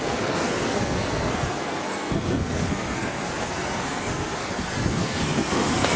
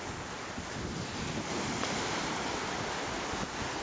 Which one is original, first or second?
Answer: second